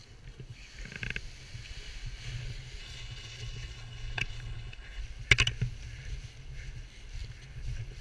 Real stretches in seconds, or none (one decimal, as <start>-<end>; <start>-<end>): 0.0-2.8; 5.0-8.0